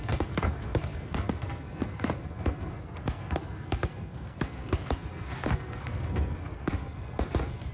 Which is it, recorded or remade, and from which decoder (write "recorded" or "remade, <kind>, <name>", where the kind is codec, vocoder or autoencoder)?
remade, codec, SNAC